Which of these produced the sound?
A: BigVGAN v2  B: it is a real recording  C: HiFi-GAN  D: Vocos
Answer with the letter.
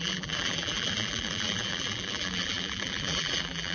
A